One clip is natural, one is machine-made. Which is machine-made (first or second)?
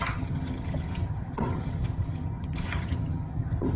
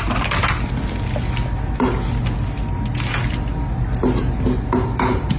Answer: first